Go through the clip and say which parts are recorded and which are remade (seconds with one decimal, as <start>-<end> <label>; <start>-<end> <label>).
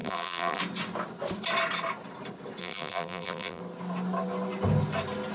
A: 0.0-0.6 remade; 0.6-2.6 recorded; 2.6-3.6 remade; 3.6-5.3 recorded